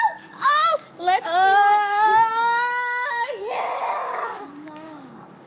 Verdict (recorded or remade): remade